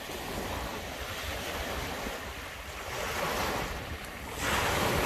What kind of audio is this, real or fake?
real